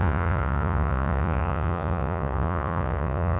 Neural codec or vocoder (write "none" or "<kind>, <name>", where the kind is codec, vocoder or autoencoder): vocoder, Vocos